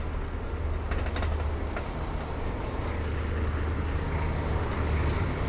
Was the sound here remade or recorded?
recorded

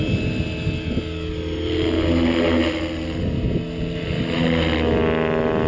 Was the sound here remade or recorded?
recorded